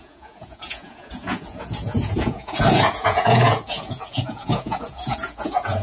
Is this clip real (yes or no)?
no